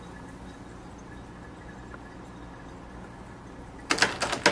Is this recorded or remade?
recorded